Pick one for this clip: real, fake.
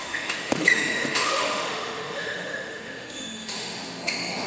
fake